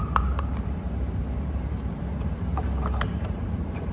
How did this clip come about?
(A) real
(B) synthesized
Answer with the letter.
B